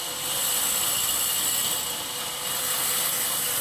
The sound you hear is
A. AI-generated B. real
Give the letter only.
B